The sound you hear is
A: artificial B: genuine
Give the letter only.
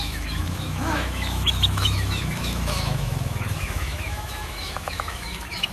A